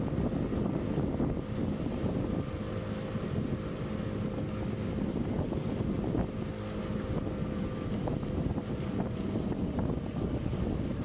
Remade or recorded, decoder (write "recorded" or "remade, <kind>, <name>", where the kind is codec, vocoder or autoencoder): recorded